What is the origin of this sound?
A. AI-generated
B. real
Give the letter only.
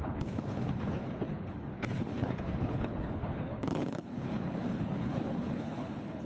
A